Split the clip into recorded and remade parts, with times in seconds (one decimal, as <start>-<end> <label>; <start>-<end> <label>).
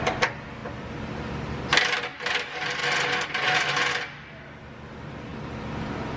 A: 0.0-6.2 recorded